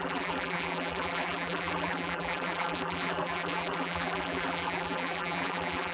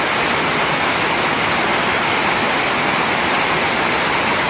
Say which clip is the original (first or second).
second